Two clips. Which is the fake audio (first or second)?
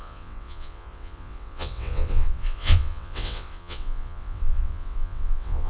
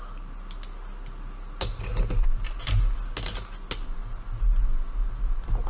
first